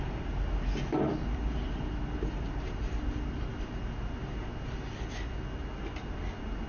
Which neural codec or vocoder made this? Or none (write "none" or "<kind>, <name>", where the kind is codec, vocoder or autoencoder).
none